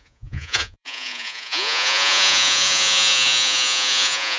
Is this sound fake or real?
fake